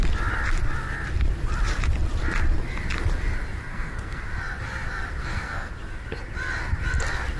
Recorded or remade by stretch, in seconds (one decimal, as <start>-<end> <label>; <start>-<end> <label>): 0.0-3.7 recorded; 3.7-4.2 remade; 4.2-5.2 recorded; 5.2-5.7 remade; 5.7-7.4 recorded